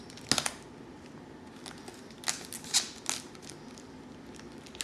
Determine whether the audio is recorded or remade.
recorded